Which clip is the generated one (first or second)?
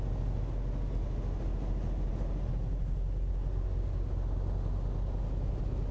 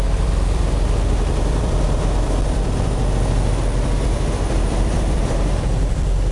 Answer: second